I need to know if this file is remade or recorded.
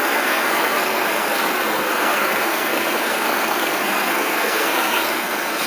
remade